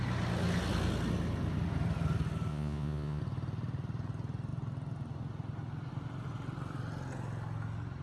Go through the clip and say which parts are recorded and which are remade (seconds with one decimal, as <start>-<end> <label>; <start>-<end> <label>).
0.0-2.5 recorded; 2.5-3.2 remade; 3.2-8.0 recorded